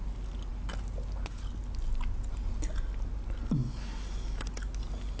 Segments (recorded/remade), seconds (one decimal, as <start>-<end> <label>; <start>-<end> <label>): 0.0-5.2 recorded